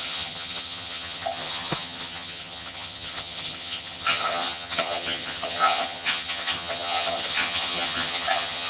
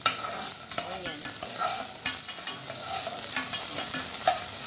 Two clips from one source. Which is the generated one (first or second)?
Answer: first